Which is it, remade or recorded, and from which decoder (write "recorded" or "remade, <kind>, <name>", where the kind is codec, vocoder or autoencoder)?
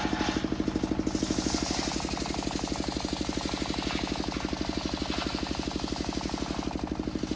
recorded